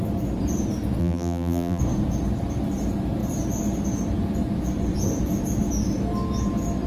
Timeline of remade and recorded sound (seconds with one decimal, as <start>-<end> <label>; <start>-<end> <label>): 0.0-1.0 recorded; 1.0-1.8 remade; 1.8-6.9 recorded